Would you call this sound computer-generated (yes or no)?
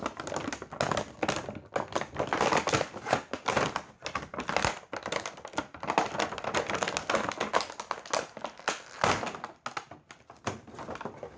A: no